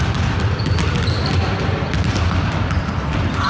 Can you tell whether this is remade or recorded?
remade